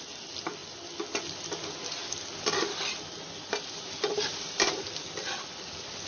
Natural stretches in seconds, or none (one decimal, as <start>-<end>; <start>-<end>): 0.0-6.1